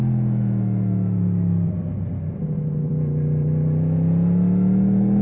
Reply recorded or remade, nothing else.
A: recorded